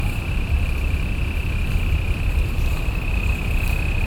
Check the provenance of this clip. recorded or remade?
recorded